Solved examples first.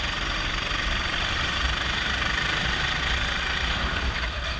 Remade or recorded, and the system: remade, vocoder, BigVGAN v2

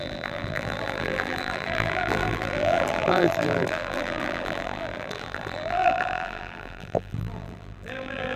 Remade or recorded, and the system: remade, vocoder, BigVGAN v2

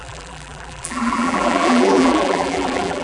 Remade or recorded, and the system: remade, vocoder, BigVGAN v2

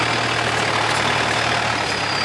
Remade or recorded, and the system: recorded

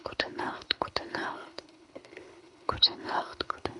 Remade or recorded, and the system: remade, codec, HILCodec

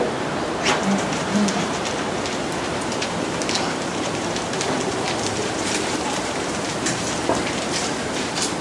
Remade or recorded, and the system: remade, vocoder, BigVGAN v2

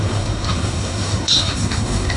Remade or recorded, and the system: remade, codec, SNAC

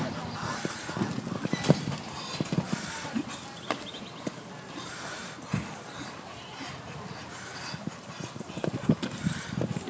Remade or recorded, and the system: recorded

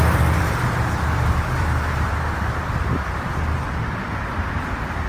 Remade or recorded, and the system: remade, vocoder, BigVGAN v2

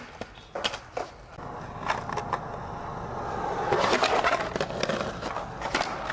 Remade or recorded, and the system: recorded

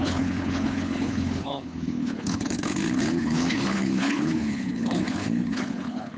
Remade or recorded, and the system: remade, codec, HILCodec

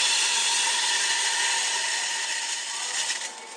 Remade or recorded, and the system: recorded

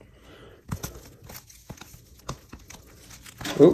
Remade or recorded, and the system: recorded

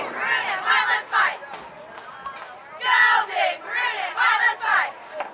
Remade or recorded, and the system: recorded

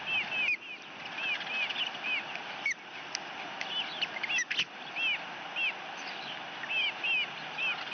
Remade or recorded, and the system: recorded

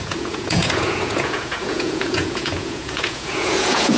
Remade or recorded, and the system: remade, vocoder, Vocos